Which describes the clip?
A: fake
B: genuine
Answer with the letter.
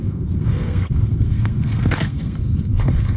A